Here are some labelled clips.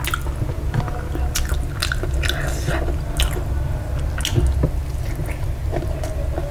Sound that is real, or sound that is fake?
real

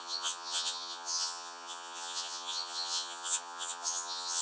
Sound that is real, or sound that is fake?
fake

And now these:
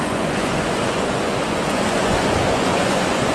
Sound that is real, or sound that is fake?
fake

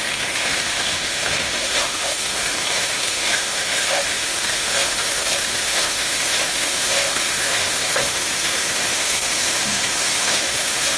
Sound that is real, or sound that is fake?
fake